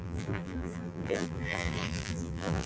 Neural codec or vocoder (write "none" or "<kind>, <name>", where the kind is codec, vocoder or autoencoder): vocoder, BigVGAN v2